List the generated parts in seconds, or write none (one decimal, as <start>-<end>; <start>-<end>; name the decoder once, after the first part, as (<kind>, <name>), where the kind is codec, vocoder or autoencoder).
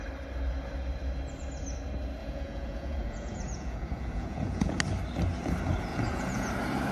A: 2.2-4.8 (vocoder, Vocos); 5.9-6.5